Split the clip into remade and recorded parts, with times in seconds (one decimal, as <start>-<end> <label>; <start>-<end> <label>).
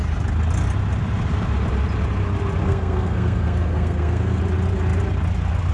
0.0-2.6 recorded; 2.6-4.4 remade; 4.4-5.7 recorded